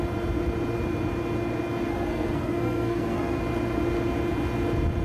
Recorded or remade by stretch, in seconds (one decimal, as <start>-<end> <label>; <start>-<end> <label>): 0.0-1.9 recorded; 1.9-3.4 remade; 3.4-5.0 recorded

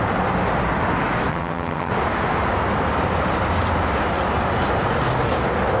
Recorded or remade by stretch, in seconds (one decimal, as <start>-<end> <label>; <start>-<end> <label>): 0.0-1.3 recorded; 1.3-1.9 remade; 1.9-5.8 recorded

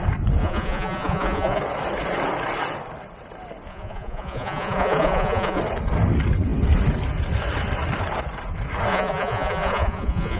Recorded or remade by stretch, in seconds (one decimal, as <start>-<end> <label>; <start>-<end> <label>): 0.0-0.4 recorded; 0.4-1.6 remade; 1.6-3.7 recorded; 3.7-5.6 remade; 5.6-8.9 recorded; 8.9-10.4 remade

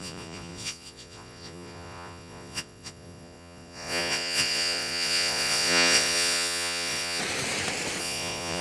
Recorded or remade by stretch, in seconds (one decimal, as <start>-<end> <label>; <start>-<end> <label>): 0.0-7.2 remade; 7.2-8.0 recorded; 8.0-8.6 remade

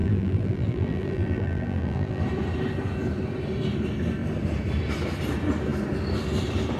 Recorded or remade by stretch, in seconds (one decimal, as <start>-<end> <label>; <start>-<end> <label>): 0.0-2.2 remade; 2.2-6.8 recorded

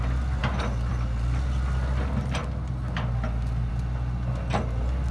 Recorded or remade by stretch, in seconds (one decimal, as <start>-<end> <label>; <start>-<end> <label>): 0.0-5.1 recorded

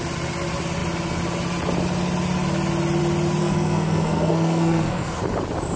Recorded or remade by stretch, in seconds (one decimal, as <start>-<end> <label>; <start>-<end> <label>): 0.0-3.4 recorded; 3.4-5.2 remade; 5.2-5.8 recorded